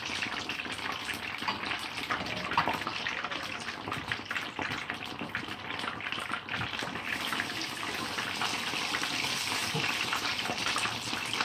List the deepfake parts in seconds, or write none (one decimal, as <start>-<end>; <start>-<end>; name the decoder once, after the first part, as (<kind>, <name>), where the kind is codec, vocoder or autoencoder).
9.6-10.7 (vocoder, BigVGAN v2)